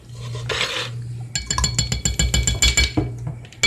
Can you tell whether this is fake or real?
real